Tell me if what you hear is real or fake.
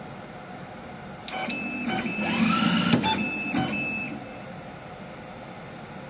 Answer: real